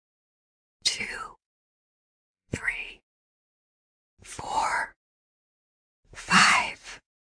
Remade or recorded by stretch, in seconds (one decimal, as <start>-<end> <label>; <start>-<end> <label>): 0.0-1.5 recorded; 1.5-2.9 remade; 2.9-7.4 recorded